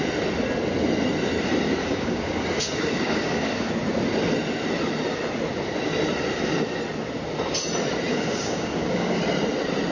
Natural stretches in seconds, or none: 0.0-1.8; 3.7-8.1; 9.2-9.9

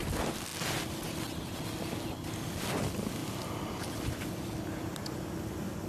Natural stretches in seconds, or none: 0.0-5.9

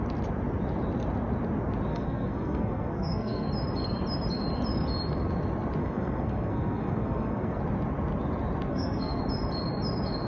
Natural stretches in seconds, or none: 0.0-1.9; 3.5-5.8; 7.6-8.7; 9.2-10.3

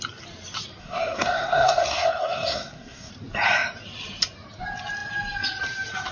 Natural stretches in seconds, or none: 0.0-0.8; 3.1-6.1